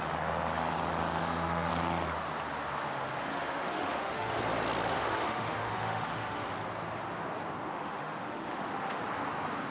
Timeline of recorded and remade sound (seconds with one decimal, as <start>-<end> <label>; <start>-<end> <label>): 0.0-1.2 recorded; 1.2-1.7 remade; 1.7-3.3 recorded; 3.3-4.4 remade; 4.4-4.9 recorded; 4.9-6.5 remade; 6.5-7.7 recorded; 7.7-9.0 remade; 9.0-9.7 recorded